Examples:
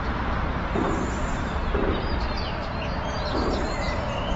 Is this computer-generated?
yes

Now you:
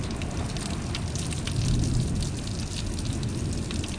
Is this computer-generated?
no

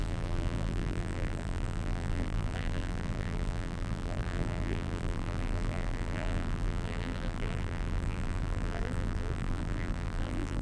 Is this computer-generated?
yes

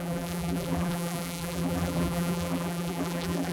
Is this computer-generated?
yes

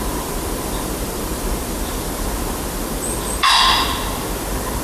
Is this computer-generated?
yes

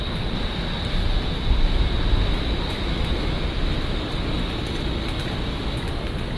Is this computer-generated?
no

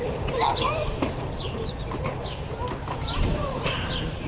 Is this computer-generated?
yes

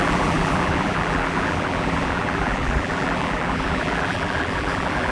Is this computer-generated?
yes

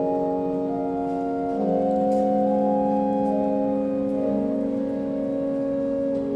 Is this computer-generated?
no